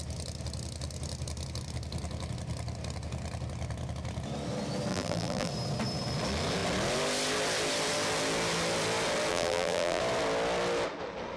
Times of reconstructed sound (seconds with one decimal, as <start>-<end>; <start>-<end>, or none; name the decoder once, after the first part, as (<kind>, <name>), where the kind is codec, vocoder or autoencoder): 4.9-5.5 (vocoder, BigVGAN v2); 9.3-10.0